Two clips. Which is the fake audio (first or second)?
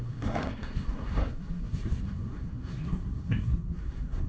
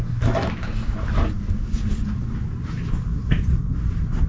first